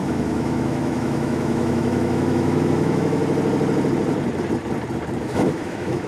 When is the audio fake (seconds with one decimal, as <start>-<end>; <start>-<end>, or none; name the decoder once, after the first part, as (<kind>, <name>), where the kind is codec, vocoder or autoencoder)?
0.0-3.2 (autoencoder, DAC-VAE); 5.2-6.1